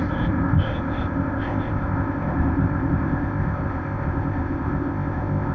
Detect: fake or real fake